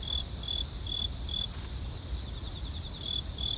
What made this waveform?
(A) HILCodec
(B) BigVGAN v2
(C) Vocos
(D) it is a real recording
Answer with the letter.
B